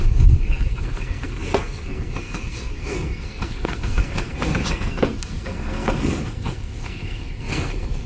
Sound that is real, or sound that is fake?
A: fake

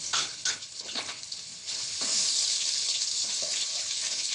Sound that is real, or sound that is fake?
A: fake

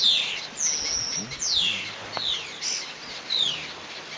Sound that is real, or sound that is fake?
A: real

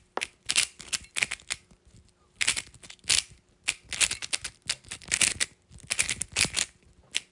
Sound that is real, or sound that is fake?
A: real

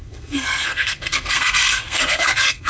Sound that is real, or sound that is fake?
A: fake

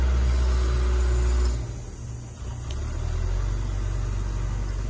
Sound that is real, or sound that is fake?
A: real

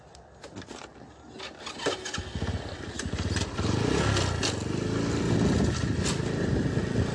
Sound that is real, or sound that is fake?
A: real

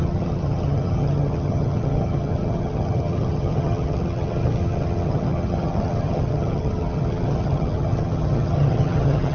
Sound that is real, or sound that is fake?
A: fake